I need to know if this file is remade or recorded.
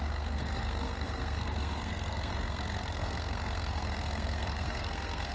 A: remade